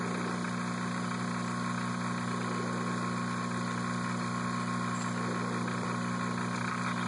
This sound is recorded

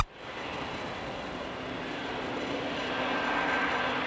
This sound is recorded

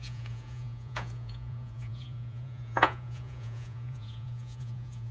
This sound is remade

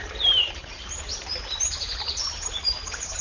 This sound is remade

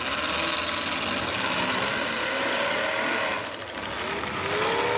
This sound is recorded